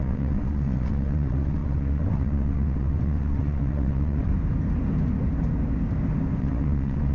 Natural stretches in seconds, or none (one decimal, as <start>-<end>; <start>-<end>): 4.3-6.4